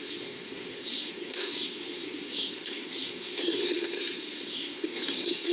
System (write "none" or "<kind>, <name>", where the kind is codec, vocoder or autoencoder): codec, SNAC